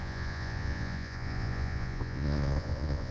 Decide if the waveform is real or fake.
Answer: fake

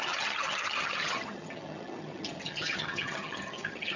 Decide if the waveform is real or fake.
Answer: fake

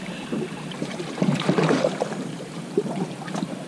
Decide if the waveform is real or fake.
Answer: fake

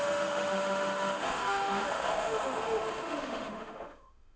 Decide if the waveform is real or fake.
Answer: fake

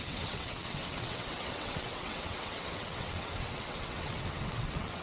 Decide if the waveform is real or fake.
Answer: fake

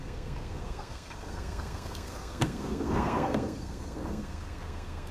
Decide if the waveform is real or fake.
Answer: fake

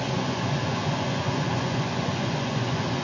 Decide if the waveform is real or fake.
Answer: fake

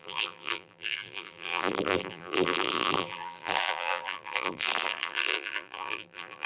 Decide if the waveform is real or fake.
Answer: fake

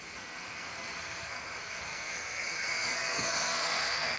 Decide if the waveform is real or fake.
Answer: fake